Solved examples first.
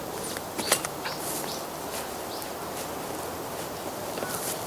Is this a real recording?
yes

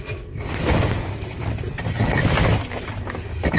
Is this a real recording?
yes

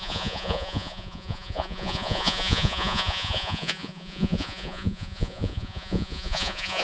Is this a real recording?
no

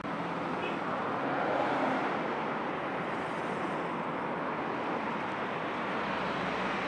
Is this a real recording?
yes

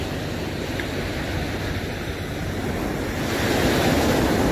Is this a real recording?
yes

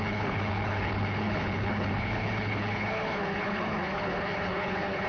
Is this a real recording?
no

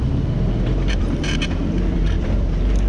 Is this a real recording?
no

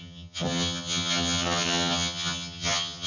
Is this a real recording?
no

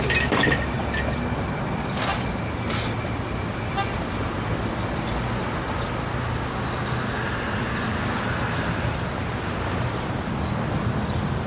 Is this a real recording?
yes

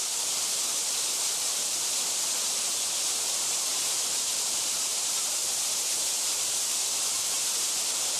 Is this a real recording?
no